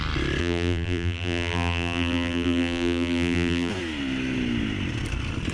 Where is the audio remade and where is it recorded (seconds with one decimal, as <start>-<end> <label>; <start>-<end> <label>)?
0.0-0.4 recorded; 0.4-3.7 remade; 3.7-5.5 recorded